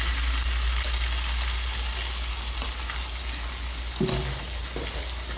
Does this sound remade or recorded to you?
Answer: recorded